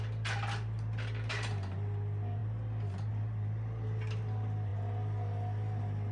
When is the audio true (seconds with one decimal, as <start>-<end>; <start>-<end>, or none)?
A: 0.0-6.1